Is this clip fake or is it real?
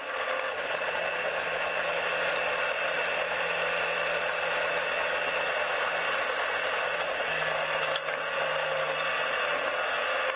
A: real